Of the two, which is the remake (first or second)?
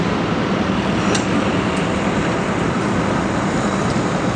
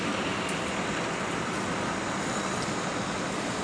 first